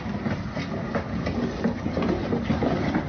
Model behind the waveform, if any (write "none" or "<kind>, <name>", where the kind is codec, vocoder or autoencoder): none